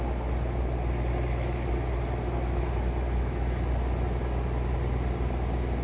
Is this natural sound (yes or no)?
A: yes